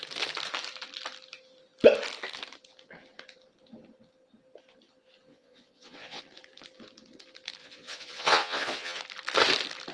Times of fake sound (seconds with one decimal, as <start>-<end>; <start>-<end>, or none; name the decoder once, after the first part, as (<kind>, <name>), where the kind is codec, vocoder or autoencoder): 5.3-6.2 (vocoder, Vocos); 7.6-9.0